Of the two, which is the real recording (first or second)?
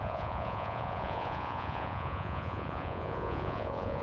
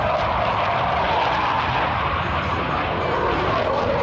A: second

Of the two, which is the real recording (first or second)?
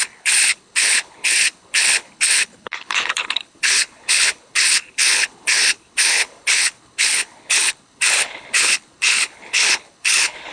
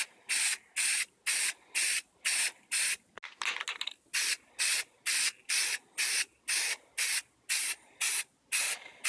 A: second